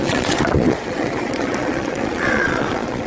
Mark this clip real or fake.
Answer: fake